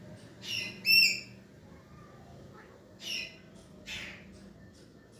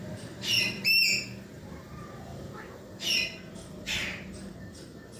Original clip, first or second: first